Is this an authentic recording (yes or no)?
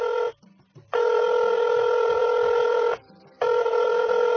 no